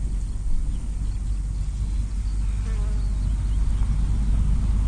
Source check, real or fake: real